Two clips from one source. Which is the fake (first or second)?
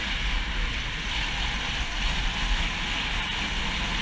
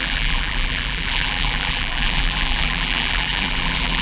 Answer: second